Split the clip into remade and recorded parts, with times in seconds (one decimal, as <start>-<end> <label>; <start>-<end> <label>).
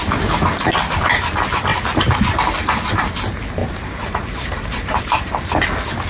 0.0-3.6 recorded; 3.6-5.5 remade; 5.5-6.1 recorded